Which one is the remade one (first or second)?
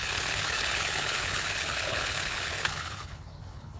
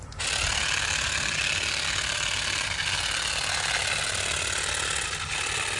first